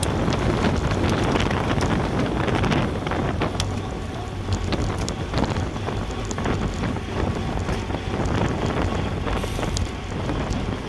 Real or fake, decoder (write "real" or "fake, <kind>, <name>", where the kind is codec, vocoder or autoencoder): real